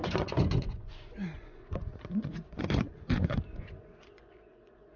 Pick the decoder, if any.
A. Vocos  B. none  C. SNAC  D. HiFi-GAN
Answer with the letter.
A